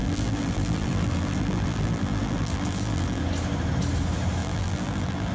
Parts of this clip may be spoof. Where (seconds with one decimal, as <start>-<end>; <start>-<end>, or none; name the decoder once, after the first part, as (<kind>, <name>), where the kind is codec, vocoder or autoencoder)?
0.0-3.2 (vocoder, BigVGAN v2); 4.4-5.3